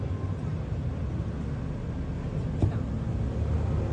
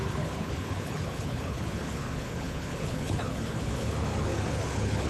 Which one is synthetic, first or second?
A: second